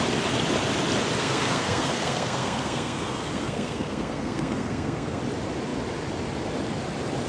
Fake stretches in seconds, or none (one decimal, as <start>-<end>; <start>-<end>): 1.2-5.2